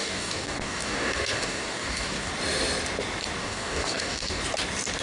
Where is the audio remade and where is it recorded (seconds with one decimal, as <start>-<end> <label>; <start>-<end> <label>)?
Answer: 0.0-2.3 remade; 2.3-3.4 recorded; 3.4-4.4 remade; 4.4-5.0 recorded